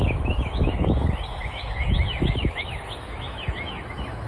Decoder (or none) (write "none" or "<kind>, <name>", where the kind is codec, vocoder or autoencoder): autoencoder, DAC-VAE